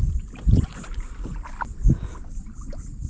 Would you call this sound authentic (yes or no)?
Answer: yes